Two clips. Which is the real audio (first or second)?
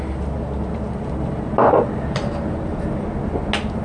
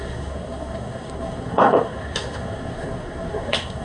first